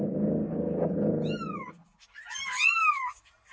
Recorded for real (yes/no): yes